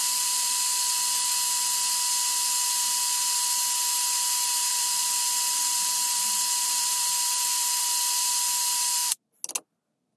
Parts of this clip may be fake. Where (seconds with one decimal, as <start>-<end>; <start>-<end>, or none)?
0.0-0.7; 4.7-8.3